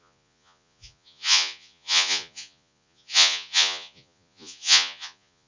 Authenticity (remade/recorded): remade